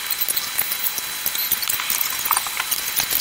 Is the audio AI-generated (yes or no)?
no